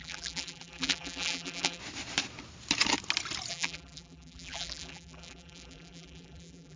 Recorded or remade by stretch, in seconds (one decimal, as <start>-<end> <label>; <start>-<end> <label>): 0.0-1.8 remade; 1.8-3.5 recorded; 3.5-6.8 remade